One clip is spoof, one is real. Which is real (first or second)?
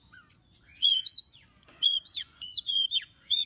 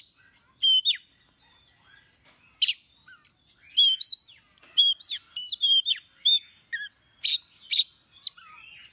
second